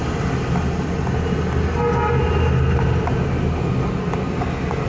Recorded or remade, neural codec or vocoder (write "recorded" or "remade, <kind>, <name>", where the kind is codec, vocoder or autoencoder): recorded